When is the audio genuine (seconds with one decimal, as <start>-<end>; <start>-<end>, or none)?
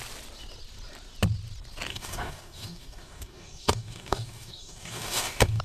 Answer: 0.0-1.9